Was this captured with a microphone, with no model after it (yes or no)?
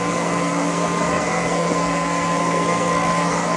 no